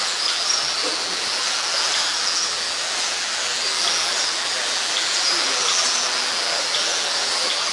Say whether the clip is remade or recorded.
remade